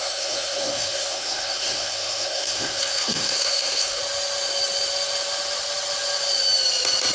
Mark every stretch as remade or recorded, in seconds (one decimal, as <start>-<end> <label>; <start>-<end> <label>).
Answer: 0.0-4.0 remade; 4.0-7.1 recorded